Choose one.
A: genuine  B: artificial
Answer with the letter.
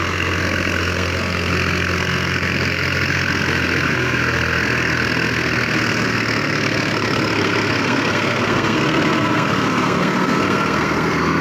B